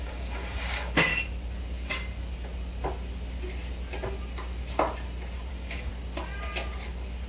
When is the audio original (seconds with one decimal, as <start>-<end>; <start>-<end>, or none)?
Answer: 1.1-5.5; 5.9-7.3